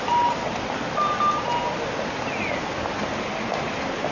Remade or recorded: recorded